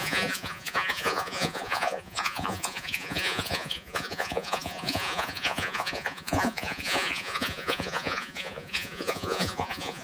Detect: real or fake fake